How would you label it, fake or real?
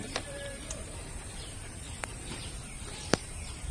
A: fake